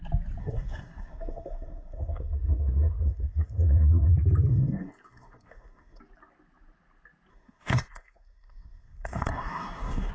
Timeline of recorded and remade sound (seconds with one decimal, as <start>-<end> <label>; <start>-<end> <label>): 0.0-0.4 recorded; 0.4-4.1 remade; 4.1-4.5 recorded; 4.5-6.0 remade; 6.0-7.3 recorded; 7.3-10.1 remade